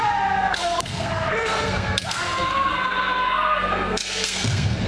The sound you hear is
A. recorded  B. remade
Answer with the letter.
B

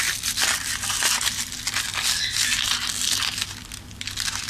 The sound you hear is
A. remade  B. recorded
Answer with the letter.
B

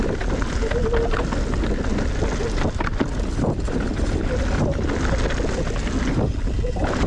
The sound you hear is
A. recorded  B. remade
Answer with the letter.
A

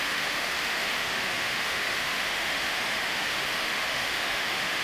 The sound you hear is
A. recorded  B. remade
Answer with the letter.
B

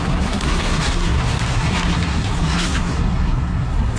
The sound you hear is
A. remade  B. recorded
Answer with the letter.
A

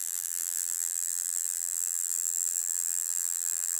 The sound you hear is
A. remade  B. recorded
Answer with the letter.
A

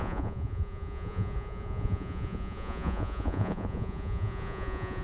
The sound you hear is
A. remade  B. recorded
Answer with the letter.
A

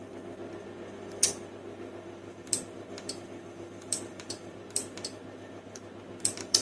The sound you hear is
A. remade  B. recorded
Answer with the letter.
A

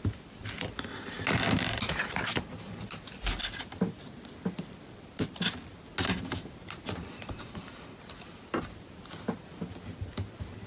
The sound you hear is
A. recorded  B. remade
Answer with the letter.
A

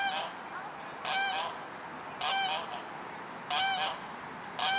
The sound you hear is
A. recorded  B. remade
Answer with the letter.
A